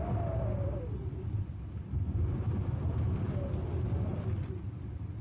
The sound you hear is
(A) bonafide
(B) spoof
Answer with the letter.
A